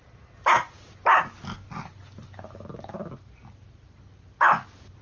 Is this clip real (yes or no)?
yes